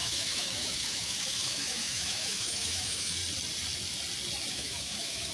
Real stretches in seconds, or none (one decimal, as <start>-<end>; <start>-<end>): 3.2-4.5